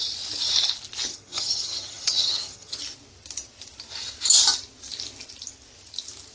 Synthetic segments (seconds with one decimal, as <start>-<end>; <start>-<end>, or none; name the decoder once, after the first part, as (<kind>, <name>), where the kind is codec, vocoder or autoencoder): 1.1-2.8 (vocoder, HiFi-GAN)